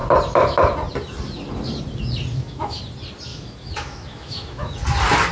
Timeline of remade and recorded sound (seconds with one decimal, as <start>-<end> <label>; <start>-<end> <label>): 0.0-2.3 recorded; 2.3-2.8 remade; 2.8-3.3 recorded; 3.3-4.7 remade; 4.7-5.3 recorded